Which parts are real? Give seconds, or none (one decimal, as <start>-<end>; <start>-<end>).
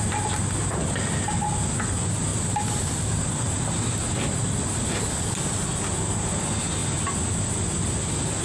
0.0-2.3; 3.1-8.4